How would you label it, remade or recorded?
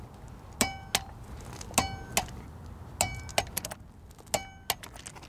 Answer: recorded